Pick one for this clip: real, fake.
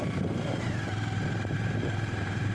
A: fake